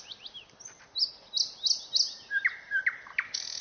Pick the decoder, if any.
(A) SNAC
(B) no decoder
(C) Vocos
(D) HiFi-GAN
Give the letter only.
B